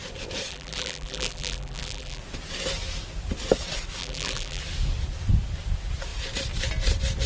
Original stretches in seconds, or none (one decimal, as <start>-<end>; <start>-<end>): 0.0-0.5; 2.2-4.0; 4.6-7.3